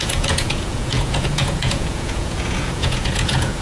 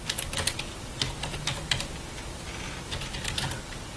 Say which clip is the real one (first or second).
second